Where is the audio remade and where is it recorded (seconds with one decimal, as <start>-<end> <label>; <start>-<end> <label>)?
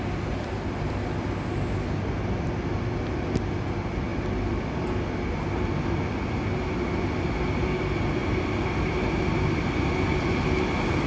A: 0.0-11.1 recorded